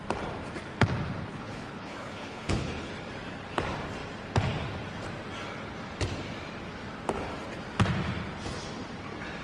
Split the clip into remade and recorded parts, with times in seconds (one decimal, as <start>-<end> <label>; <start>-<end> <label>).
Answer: 0.0-1.3 recorded; 1.3-2.9 remade; 2.9-9.4 recorded